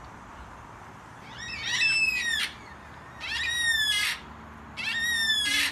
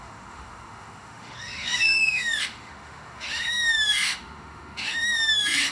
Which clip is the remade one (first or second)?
second